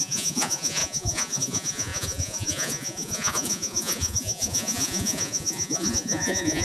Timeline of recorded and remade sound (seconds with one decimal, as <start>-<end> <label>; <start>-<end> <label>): 0.0-6.6 remade